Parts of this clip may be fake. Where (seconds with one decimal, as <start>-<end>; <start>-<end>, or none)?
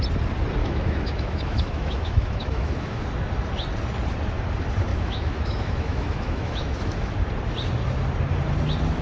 0.6-3.0; 4.9-7.1